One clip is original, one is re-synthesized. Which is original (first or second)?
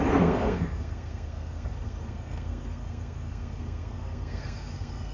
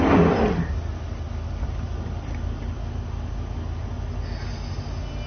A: second